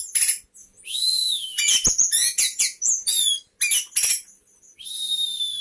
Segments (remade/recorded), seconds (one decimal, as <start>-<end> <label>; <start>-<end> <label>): 0.0-0.6 recorded; 0.6-3.3 remade; 3.3-5.6 recorded